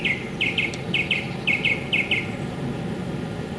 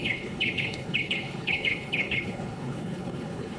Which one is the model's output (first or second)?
second